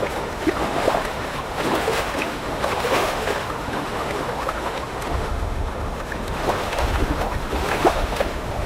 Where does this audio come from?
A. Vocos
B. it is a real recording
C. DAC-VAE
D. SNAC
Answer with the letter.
C